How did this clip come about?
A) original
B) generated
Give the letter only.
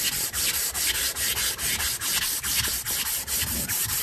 A